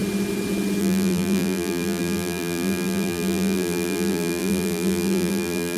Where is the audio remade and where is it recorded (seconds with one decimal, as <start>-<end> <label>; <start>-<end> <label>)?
0.0-0.8 recorded; 0.8-5.8 remade